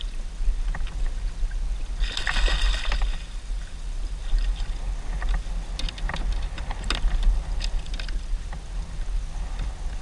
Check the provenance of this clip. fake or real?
real